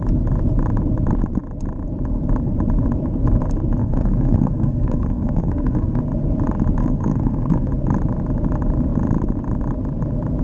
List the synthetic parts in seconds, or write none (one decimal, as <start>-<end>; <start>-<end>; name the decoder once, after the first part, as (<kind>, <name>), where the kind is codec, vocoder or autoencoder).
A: 3.8-6.0 (codec, SNAC); 6.8-7.7